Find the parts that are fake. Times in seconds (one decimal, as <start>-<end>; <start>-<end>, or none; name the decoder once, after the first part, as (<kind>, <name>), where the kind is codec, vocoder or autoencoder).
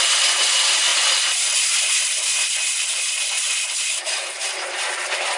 none